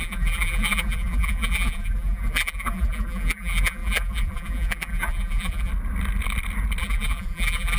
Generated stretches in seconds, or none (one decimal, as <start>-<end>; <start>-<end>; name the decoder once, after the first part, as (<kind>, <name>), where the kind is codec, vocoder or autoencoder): 0.0-5.7 (vocoder, BigVGAN v2); 6.8-7.8